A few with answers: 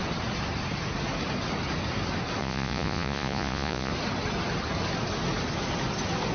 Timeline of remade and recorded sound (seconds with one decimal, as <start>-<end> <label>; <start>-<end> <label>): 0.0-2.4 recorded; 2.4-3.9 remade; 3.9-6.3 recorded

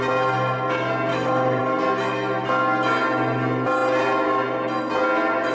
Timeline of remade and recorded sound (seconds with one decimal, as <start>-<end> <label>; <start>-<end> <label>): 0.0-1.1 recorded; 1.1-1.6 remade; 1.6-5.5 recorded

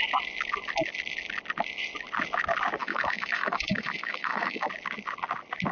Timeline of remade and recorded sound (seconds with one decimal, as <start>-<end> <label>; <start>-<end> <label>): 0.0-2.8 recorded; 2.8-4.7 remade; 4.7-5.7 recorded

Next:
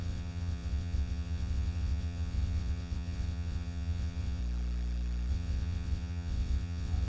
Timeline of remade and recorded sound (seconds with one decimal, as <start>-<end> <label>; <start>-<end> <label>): 0.0-4.4 remade; 4.4-5.3 recorded; 5.3-7.1 remade

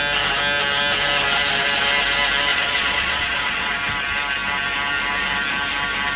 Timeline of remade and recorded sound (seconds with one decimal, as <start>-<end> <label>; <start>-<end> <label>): 0.0-2.5 recorded; 2.5-3.7 remade; 3.7-6.2 recorded

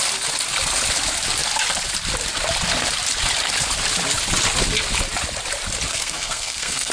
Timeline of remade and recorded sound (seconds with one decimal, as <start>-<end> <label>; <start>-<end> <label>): 0.0-5.9 recorded; 5.9-6.9 remade

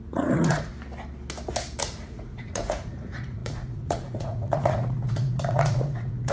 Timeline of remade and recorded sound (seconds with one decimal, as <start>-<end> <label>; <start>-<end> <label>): 0.0-0.7 remade; 0.7-1.8 recorded; 1.8-6.3 remade

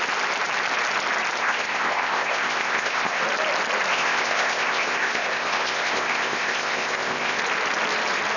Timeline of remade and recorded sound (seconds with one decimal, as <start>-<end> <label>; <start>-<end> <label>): 0.0-1.4 recorded; 1.4-3.2 remade; 3.2-3.9 recorded; 3.9-7.4 remade; 7.4-8.4 recorded